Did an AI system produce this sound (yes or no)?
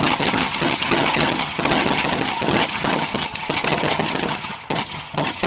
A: yes